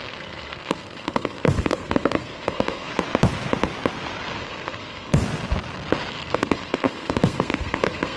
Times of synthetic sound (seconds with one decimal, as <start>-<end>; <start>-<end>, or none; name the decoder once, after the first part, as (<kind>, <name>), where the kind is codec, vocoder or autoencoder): 0.0-2.9 (codec, SNAC); 4.4-5.2; 6.1-8.2